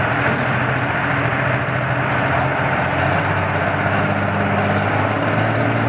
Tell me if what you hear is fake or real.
real